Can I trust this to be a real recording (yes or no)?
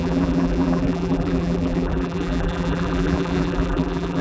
no